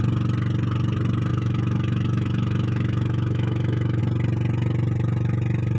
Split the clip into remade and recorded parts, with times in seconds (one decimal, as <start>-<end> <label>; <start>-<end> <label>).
0.0-1.3 recorded; 1.3-4.0 remade; 4.0-5.8 recorded